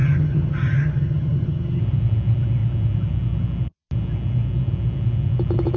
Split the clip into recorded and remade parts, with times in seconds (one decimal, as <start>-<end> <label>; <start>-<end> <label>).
0.0-1.8 remade; 1.8-5.8 recorded